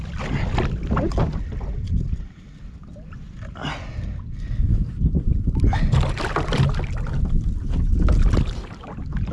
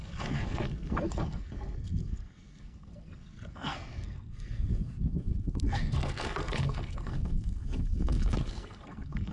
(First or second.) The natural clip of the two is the first